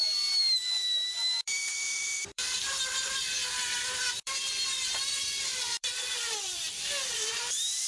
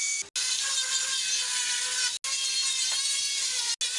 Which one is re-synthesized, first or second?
first